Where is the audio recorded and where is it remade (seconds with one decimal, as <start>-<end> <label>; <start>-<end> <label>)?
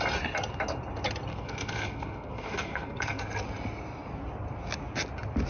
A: 0.0-1.3 recorded; 1.3-3.2 remade; 3.2-5.5 recorded